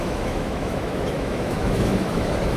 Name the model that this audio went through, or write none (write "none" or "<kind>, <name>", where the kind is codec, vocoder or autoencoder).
autoencoder, DAC-VAE